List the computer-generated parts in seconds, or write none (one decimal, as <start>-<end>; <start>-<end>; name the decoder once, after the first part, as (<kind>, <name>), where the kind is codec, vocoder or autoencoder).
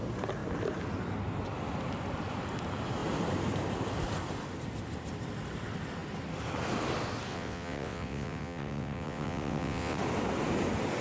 7.3-10.0 (vocoder, WaveNeXt)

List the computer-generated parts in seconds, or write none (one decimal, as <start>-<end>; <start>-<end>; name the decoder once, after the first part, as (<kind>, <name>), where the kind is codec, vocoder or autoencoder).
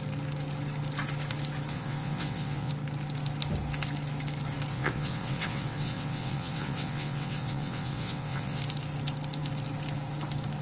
1.7-2.7 (vocoder, WaveNeXt); 4.7-8.6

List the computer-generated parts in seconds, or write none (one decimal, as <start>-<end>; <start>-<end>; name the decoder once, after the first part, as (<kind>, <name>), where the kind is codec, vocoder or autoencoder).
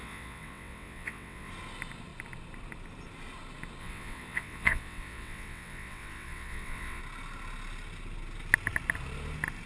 0.0-1.5 (vocoder, WaveNeXt); 3.8-7.0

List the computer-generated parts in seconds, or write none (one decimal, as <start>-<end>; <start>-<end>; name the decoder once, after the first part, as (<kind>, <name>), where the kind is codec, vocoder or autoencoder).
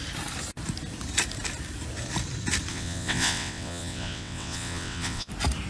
2.7-5.3 (vocoder, WaveNeXt)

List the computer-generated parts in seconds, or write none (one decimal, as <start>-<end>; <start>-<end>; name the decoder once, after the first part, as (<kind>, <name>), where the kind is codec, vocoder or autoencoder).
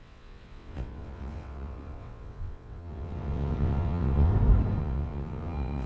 0.0-4.3 (vocoder, WaveNeXt); 4.8-5.9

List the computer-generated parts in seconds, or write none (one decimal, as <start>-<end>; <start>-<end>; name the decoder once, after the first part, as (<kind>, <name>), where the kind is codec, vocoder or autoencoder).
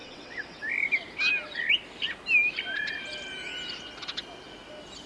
0.0-0.6 (vocoder, WaveNeXt)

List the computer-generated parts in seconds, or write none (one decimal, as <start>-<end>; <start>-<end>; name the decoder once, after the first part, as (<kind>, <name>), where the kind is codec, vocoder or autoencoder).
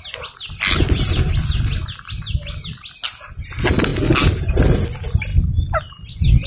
none